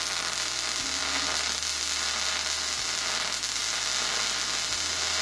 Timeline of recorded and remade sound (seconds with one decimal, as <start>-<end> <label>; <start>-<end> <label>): 0.0-5.2 recorded